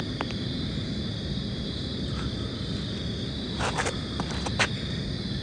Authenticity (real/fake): real